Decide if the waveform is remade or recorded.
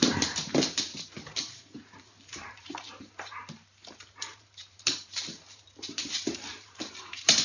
remade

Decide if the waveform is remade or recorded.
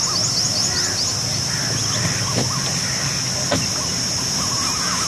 recorded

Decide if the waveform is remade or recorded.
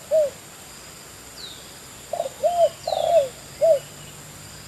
recorded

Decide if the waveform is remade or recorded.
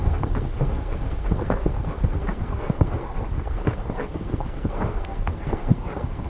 remade